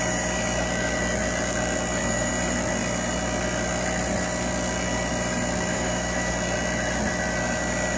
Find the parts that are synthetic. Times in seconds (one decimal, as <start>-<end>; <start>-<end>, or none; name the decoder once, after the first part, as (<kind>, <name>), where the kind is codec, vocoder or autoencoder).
5.7-6.3 (autoencoder, DAC-VAE)